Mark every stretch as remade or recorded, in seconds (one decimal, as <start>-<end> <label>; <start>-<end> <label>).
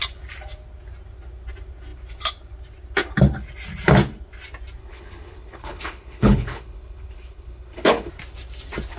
0.0-4.8 recorded; 4.8-8.1 remade; 8.1-9.0 recorded